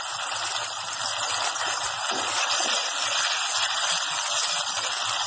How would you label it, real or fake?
real